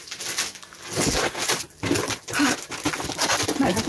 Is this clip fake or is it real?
real